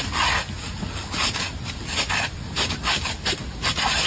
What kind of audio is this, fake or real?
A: real